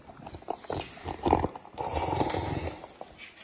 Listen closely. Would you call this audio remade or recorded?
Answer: recorded